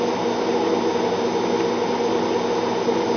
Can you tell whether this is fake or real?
real